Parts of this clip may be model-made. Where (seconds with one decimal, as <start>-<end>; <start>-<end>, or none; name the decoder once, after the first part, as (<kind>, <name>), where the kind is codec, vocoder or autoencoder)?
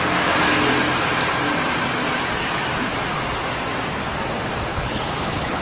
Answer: 4.7-5.6 (codec, HILCodec)